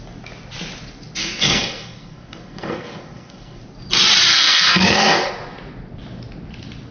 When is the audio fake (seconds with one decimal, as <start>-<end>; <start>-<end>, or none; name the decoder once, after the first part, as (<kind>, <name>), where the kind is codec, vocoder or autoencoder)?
1.2-3.6 (codec, SNAC); 4.3-5.3